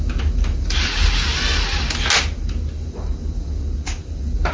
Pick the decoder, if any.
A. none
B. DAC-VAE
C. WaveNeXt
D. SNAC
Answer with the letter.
A